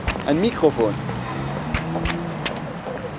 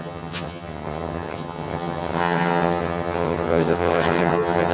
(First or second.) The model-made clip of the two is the second